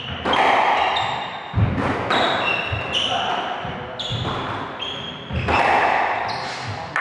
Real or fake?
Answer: real